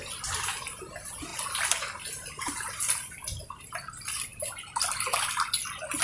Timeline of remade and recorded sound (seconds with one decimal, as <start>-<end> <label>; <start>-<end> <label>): 0.0-6.0 recorded